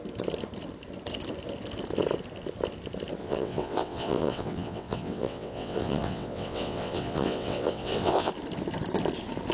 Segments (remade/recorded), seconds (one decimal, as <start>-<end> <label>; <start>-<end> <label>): 0.0-3.2 recorded; 3.2-8.3 remade; 8.3-9.5 recorded